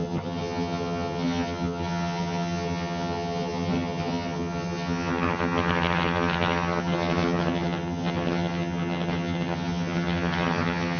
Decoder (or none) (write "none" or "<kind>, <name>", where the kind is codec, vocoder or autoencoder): vocoder, HiFi-GAN